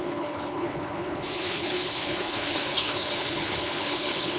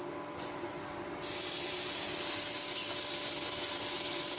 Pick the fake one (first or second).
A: first